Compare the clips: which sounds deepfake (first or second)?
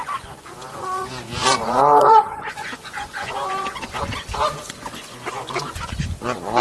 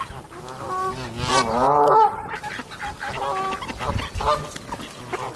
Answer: first